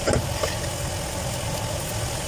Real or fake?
real